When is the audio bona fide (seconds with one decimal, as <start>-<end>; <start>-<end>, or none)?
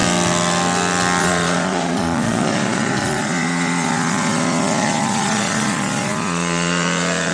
0.0-1.2